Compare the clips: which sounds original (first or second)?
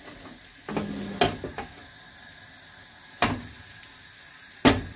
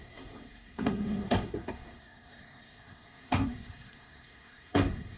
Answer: first